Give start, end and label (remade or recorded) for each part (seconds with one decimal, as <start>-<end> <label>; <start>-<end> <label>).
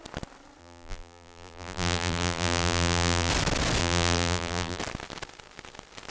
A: 0.0-0.6 recorded; 0.6-3.3 remade; 3.3-3.8 recorded; 3.8-4.8 remade; 4.8-6.1 recorded